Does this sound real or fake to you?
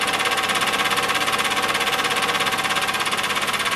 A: real